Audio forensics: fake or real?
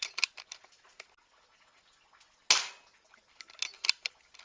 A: real